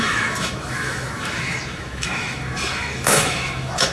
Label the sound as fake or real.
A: fake